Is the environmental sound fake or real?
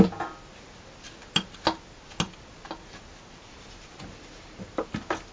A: real